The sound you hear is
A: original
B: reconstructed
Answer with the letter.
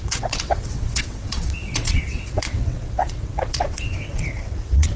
B